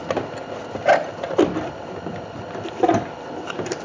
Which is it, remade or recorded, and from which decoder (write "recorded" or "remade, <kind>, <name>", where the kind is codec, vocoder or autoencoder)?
remade, vocoder, BigVGAN v2